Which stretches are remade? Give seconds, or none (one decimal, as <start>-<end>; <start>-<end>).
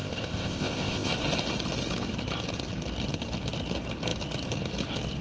0.0-1.1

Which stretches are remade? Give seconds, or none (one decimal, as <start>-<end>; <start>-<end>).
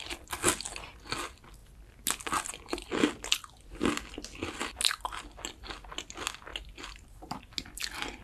6.5-7.4